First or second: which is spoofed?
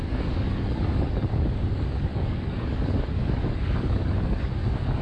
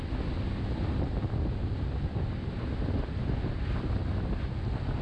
first